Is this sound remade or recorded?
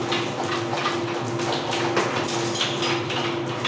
recorded